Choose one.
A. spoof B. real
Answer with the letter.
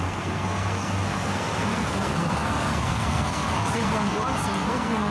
A